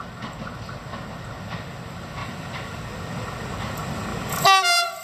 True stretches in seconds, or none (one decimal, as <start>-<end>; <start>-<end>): 0.0-2.2; 2.8-5.0